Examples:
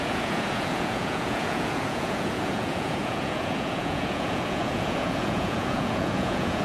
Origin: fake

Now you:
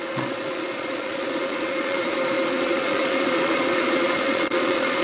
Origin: fake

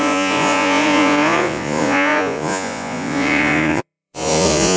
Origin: fake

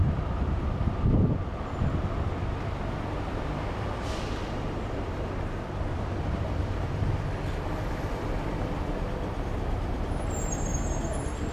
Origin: fake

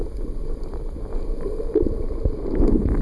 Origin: real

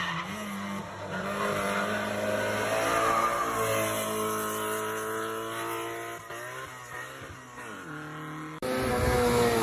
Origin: real